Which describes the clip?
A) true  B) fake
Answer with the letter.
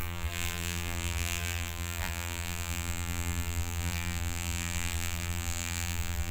B